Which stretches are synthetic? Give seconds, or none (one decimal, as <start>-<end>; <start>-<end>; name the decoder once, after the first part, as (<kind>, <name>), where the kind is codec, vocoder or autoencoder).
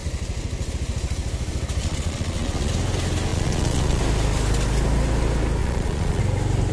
1.8-2.7 (vocoder, Vocos); 3.3-4.0; 5.6-6.2